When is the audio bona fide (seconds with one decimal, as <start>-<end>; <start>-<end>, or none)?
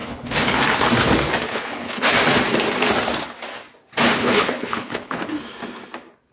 0.6-1.5; 2.1-4.2; 5.2-6.3